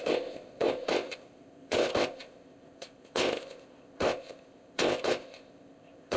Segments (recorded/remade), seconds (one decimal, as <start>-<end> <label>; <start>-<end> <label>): 0.0-6.2 remade